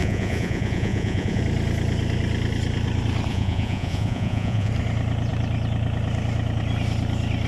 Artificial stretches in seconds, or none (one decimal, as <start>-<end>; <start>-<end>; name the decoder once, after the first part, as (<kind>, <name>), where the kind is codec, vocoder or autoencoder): 0.0-1.4 (vocoder, Vocos); 3.3-4.7